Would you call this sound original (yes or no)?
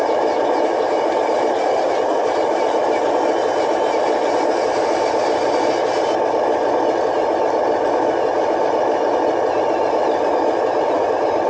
yes